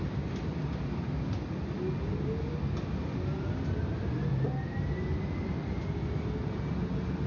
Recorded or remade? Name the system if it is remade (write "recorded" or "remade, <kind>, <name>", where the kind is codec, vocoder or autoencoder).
recorded